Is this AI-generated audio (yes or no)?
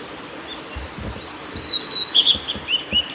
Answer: yes